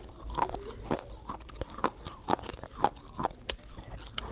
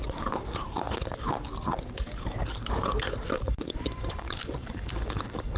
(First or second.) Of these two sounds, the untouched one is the first